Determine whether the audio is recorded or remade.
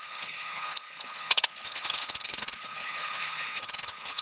remade